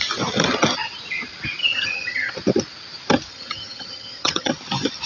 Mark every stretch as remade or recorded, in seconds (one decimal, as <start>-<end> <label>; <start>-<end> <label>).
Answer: 0.0-1.6 recorded; 1.6-2.3 remade; 2.3-3.3 recorded; 3.3-4.5 remade; 4.5-5.1 recorded